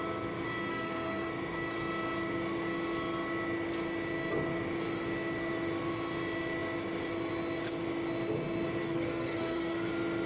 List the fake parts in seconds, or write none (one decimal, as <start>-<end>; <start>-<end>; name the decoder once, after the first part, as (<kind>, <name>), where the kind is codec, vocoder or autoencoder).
0.7-1.3 (codec, SNAC); 8.8-9.9